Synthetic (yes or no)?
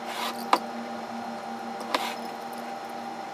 no